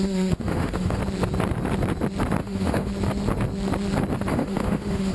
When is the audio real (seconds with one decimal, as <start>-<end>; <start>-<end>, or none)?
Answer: 1.0-2.4; 2.9-4.3